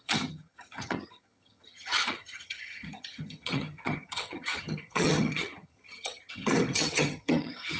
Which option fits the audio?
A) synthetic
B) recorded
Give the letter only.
A